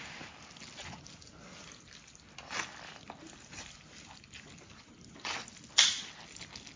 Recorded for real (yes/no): yes